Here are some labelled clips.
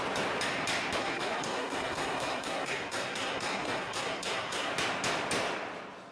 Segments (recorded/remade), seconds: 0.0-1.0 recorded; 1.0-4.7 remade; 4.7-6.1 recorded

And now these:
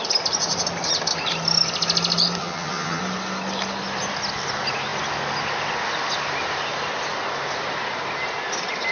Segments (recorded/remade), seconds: 0.0-2.4 recorded; 2.4-3.0 remade; 3.0-8.9 recorded

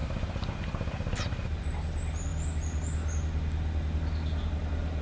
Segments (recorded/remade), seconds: 0.0-5.0 recorded

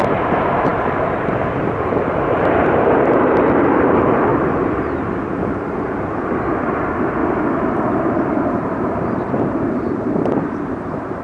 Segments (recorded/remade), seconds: 0.0-4.3 remade; 4.3-6.4 recorded; 6.4-7.2 remade; 7.2-7.9 recorded; 7.9-11.2 remade

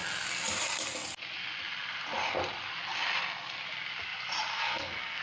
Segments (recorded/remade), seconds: 0.0-4.5 recorded; 4.5-5.2 remade

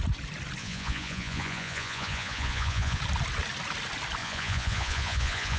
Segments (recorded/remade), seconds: 0.0-0.6 recorded; 0.6-3.0 remade; 3.0-4.2 recorded; 4.2-5.6 remade

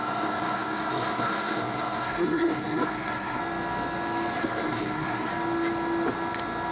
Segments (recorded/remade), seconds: 0.0-3.4 remade; 3.4-4.4 recorded; 4.4-5.3 remade; 5.3-6.7 recorded